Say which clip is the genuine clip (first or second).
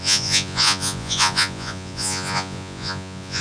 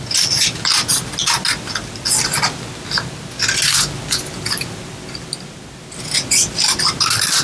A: second